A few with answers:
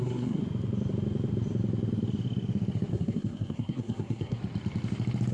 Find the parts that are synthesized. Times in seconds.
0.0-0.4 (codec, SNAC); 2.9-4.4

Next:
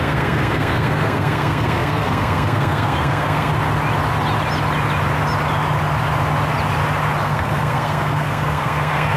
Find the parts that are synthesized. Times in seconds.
0.0-3.5 (codec, SNAC); 7.2-9.2

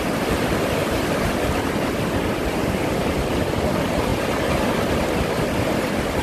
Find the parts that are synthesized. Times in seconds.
none

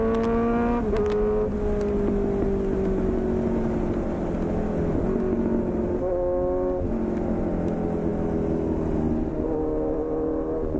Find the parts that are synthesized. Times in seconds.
none

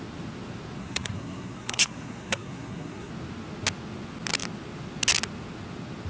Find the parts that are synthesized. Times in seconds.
0.8-3.1 (codec, SNAC)

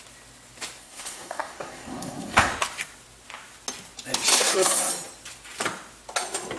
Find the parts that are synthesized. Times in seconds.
0.8-2.5 (codec, SNAC); 4.3-4.9

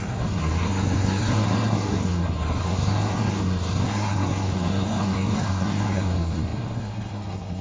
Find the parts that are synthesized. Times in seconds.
0.0-7.6 (codec, SNAC)